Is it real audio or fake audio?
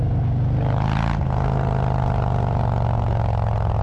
real